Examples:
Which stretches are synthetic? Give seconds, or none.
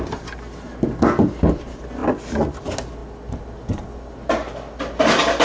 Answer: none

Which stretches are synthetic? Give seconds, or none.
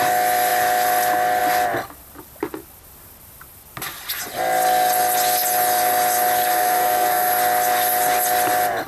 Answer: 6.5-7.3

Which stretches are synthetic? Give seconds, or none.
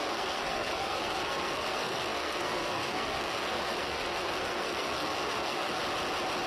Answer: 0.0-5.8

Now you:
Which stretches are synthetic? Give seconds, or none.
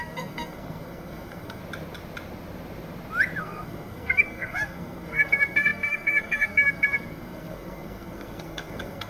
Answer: 0.0-1.6; 3.4-9.1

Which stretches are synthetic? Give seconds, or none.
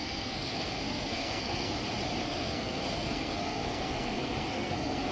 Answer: 0.0-1.8; 2.2-5.1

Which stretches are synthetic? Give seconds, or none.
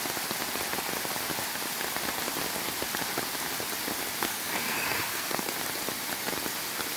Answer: 4.2-5.5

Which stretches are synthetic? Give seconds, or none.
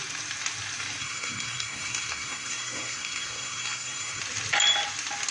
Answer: 1.0-4.2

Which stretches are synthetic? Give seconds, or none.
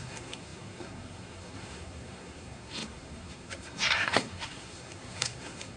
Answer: 0.0-5.8